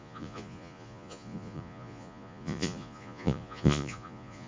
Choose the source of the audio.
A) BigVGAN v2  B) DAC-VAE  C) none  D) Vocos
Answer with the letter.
D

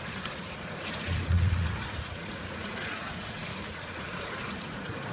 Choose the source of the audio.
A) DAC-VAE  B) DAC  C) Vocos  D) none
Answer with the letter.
C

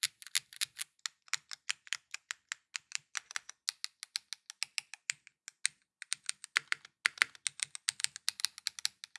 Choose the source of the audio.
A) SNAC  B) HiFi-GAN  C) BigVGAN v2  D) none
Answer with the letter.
D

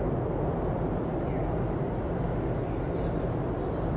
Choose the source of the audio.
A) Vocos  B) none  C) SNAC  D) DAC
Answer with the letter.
B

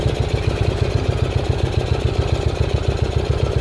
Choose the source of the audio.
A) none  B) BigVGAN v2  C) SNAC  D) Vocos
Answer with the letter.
A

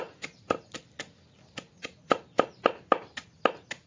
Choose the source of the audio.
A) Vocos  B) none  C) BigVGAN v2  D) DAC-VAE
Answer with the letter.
B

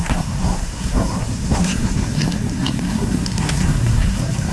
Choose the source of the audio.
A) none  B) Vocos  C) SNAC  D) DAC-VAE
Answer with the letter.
C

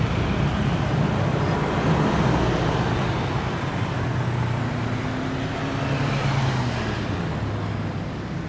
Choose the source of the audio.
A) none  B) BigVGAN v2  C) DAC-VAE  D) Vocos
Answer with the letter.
A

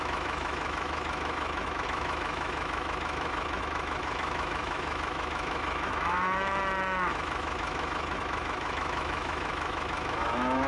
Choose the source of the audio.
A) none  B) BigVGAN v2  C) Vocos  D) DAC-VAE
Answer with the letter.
D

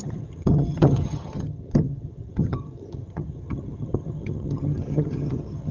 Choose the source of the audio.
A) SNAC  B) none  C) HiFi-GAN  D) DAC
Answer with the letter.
C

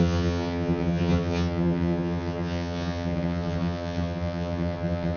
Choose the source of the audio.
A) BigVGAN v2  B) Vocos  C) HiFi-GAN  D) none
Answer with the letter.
C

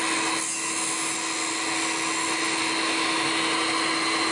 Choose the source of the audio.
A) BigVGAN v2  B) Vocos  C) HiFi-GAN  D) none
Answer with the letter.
D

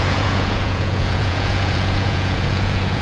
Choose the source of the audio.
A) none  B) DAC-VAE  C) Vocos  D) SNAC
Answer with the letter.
C